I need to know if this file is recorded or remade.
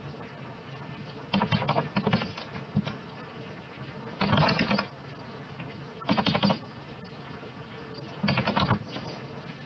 recorded